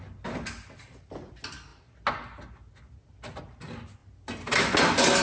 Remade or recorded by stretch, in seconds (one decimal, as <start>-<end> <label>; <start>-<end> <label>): 0.0-5.2 recorded